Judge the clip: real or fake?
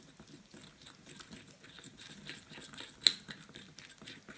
real